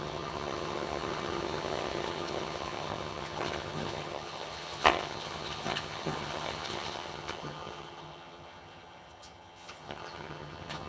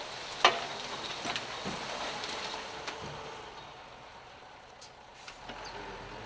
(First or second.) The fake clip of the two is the first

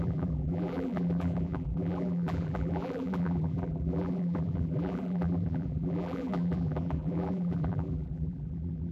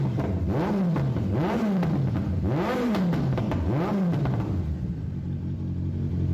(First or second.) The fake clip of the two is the first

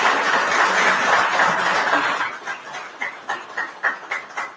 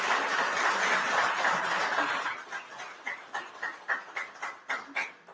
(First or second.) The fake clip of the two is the second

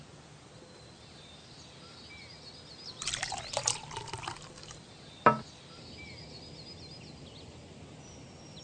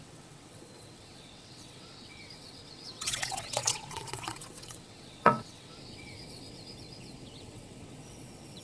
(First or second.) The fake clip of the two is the second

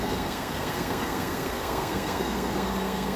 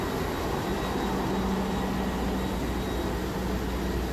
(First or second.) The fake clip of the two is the first